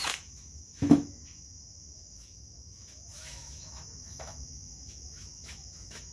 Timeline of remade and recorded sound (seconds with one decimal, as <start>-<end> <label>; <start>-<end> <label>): 0.0-6.1 remade